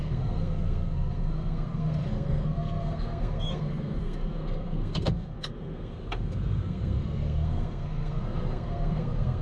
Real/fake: fake